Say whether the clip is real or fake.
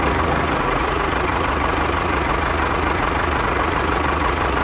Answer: fake